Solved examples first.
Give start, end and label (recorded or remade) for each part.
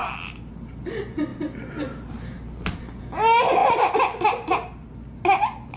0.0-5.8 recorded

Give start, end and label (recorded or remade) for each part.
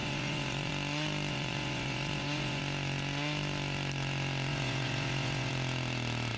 0.0-0.7 remade; 0.7-1.3 recorded; 1.3-2.6 remade; 2.6-4.5 recorded; 4.5-5.5 remade; 5.5-6.4 recorded